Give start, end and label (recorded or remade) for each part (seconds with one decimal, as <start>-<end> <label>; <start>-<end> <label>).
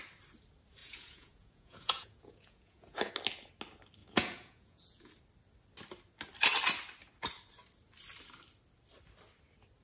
0.0-0.8 recorded; 0.8-3.1 remade; 3.1-4.0 recorded; 4.0-5.1 remade; 5.1-9.8 recorded